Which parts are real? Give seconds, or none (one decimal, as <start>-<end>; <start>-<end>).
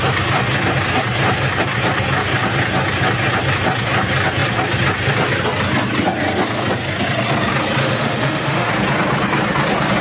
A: 0.0-7.8; 8.7-10.0